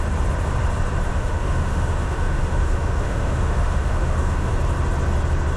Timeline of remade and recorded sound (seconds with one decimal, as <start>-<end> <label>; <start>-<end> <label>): 0.0-1.1 recorded; 1.1-4.5 remade; 4.5-5.6 recorded